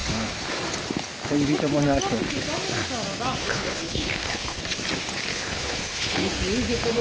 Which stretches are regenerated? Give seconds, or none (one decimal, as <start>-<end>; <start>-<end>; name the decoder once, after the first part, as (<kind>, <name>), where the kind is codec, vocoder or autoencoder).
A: 3.4-4.6 (codec, HILCodec); 5.3-6.3